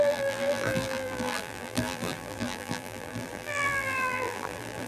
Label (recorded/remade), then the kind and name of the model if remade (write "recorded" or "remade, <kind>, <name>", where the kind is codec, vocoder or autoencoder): remade, vocoder, BigVGAN v2